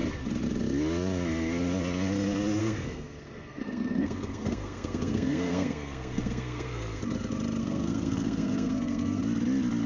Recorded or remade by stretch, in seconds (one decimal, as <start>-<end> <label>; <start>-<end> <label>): 0.0-2.6 recorded; 2.6-7.0 remade; 7.0-7.6 recorded; 7.6-9.2 remade; 9.2-9.9 recorded